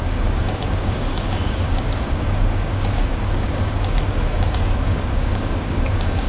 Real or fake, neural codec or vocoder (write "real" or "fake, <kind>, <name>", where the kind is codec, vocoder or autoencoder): fake, codec, DAC